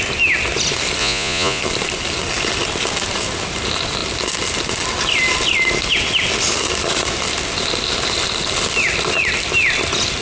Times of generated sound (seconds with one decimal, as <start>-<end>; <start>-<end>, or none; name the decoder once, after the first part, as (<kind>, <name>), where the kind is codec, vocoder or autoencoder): 1.0-1.6 (vocoder, Vocos)